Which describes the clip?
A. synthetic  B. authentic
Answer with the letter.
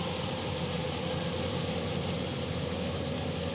B